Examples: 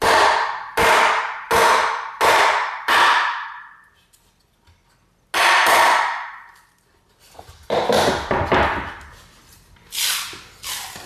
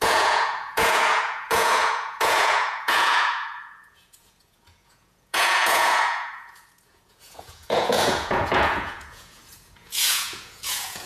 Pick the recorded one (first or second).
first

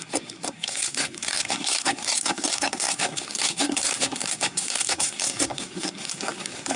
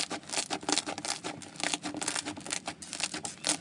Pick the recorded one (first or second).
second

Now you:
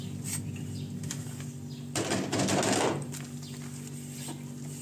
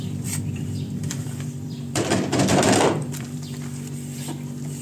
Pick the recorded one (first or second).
first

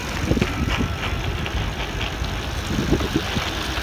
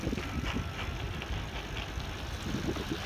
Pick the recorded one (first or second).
first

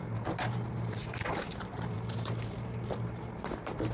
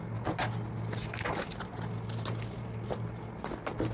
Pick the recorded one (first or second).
second